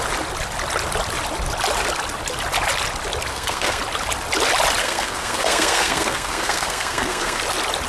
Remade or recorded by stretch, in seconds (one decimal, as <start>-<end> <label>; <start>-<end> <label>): 0.0-3.3 recorded; 3.3-3.8 remade; 3.8-4.8 recorded; 4.8-7.4 remade; 7.4-7.9 recorded